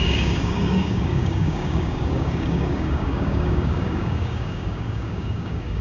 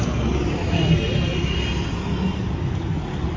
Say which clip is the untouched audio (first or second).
second